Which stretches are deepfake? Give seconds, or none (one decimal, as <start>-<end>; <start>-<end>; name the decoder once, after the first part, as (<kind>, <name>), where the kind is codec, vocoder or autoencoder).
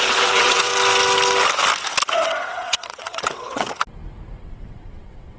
0.0-0.7 (vocoder, WaveNeXt); 2.1-3.7; 4.4-5.4